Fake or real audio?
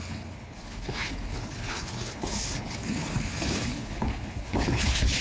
fake